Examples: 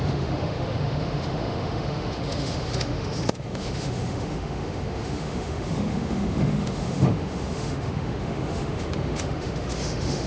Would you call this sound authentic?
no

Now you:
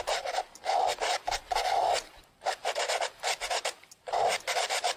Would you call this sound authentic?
yes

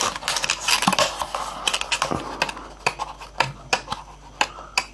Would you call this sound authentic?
yes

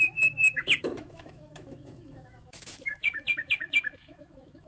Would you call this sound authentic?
no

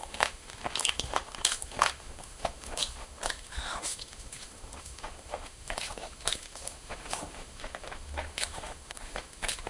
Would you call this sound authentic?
no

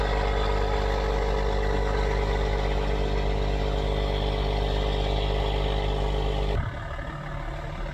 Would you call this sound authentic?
yes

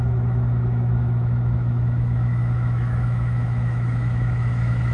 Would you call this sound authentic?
no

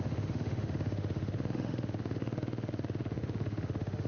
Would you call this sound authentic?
no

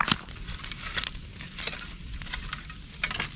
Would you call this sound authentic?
yes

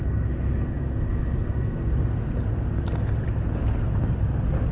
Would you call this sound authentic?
yes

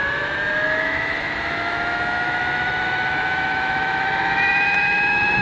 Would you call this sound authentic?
no